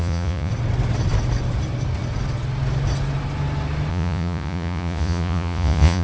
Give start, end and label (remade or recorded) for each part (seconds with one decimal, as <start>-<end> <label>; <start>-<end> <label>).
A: 0.0-0.5 remade; 0.5-3.9 recorded; 3.9-6.0 remade